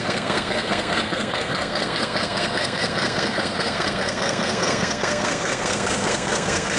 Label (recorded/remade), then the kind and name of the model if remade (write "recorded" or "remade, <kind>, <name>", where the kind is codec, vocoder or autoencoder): remade, codec, SNAC